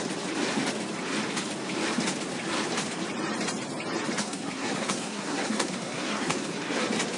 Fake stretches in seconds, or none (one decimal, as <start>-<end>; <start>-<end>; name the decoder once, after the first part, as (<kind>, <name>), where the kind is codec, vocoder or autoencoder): 4.2-6.8 (codec, SNAC)